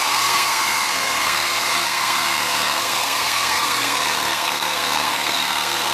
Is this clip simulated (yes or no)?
yes